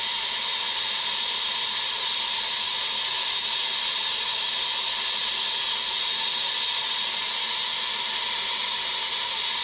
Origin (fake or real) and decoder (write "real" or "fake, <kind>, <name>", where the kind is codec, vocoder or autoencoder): real